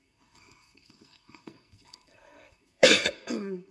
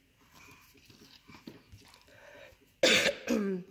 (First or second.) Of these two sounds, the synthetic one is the first